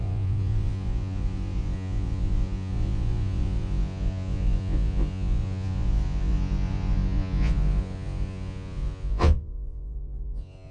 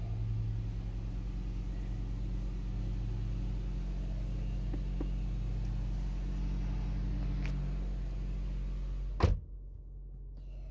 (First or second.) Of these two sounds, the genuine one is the second